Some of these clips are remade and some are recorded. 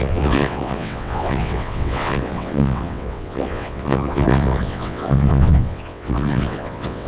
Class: remade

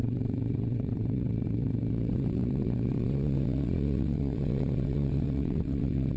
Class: remade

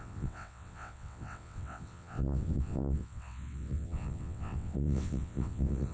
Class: remade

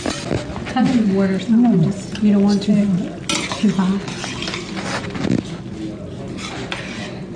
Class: recorded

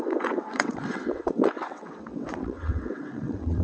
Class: remade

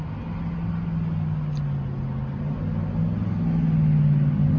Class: recorded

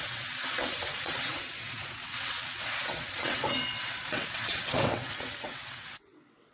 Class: remade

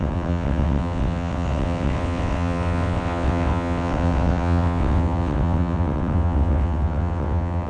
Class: remade